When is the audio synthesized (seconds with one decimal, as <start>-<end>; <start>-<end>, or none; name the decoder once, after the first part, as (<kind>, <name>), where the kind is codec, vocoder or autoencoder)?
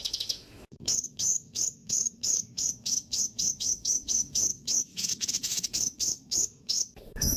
0.0-7.4 (autoencoder, DAC-VAE)